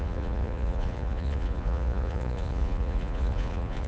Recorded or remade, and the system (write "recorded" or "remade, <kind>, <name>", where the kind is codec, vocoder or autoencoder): remade, vocoder, Vocos